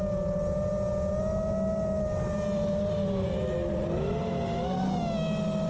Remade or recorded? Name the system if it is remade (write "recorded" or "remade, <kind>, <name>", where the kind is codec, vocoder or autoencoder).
recorded